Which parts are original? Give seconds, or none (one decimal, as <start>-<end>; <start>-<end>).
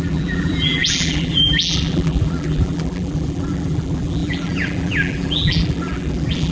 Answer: none